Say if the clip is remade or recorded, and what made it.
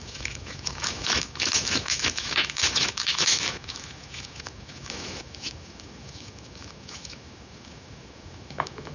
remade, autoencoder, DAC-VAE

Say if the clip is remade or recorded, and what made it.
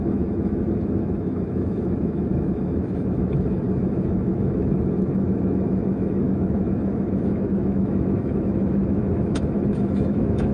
remade, autoencoder, DAC-VAE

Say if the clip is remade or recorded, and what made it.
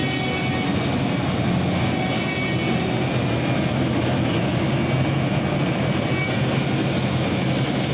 recorded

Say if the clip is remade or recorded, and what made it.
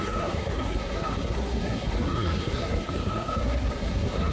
remade, codec, SNAC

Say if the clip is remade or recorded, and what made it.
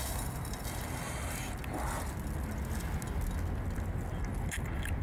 recorded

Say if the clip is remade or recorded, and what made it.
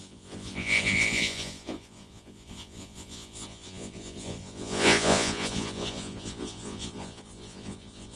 remade, vocoder, Vocos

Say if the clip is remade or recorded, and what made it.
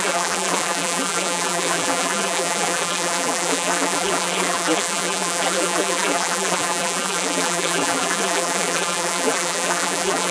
remade, vocoder, BigVGAN v2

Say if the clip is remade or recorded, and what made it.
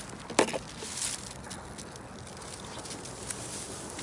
recorded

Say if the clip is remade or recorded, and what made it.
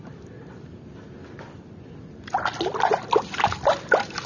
recorded